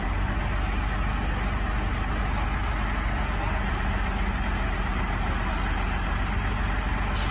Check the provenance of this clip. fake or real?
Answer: real